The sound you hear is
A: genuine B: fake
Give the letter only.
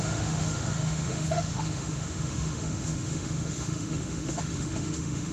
B